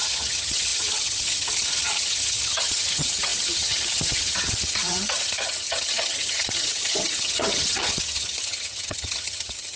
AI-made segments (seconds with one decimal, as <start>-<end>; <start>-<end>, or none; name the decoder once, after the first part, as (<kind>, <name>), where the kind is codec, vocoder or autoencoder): 0.0-9.8 (vocoder, HiFi-GAN)